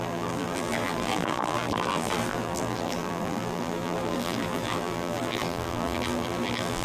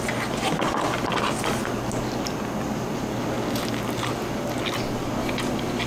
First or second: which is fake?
first